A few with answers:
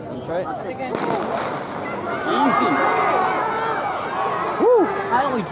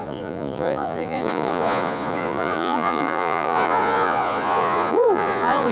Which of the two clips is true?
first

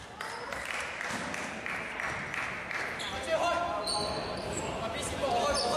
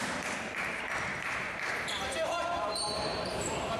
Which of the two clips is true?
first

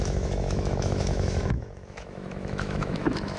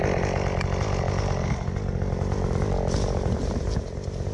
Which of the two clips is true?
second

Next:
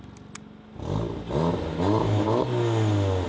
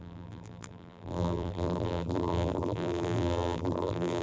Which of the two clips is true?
first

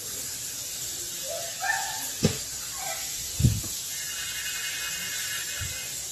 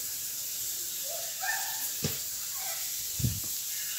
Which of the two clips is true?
first